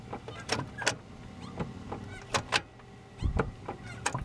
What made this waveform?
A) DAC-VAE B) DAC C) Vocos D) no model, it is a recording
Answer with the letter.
D